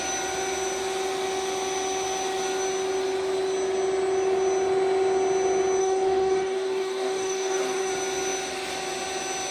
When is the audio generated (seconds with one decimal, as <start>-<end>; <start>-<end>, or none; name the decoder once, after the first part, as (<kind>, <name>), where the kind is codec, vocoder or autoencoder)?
5.8-7.9 (codec, DAC)